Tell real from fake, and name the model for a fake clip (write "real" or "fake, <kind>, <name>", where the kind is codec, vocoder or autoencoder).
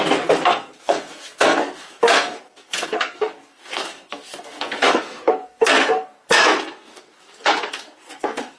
fake, codec, SNAC